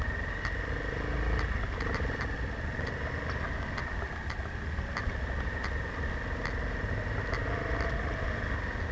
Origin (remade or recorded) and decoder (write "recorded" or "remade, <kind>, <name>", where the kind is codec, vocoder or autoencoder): recorded